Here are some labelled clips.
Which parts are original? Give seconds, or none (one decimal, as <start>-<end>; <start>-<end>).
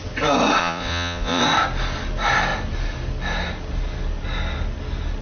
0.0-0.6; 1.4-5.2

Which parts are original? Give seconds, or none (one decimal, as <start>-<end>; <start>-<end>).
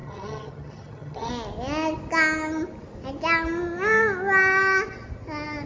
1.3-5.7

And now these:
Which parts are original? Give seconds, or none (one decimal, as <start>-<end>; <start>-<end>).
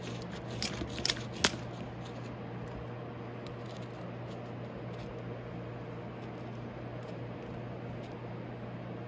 0.0-9.1